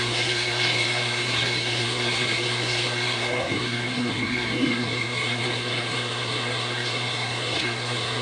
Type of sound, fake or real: fake